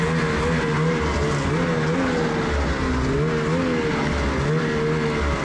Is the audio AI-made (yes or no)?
no